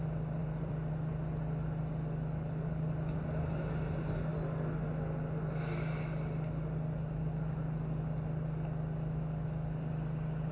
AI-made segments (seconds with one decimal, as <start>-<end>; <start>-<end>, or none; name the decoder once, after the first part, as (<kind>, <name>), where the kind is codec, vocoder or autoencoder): 0.4-0.9 (vocoder, BigVGAN v2); 4.3-6.0

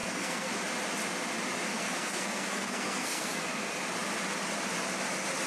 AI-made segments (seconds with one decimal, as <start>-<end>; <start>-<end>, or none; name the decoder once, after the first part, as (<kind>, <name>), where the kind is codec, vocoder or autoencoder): 0.0-0.5 (codec, SNAC); 1.7-3.4